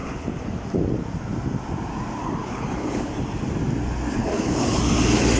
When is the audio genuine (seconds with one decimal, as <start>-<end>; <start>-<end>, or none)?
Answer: 0.5-2.2; 3.2-4.2; 4.8-5.4